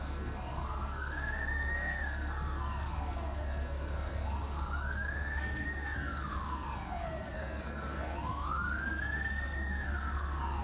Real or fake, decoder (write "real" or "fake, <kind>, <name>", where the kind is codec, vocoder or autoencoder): fake, codec, SNAC